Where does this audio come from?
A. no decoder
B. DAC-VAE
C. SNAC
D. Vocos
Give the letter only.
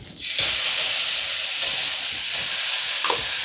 A